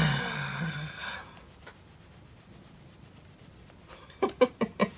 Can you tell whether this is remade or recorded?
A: recorded